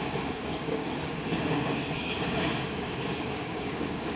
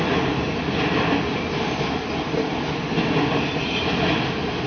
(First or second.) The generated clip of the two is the first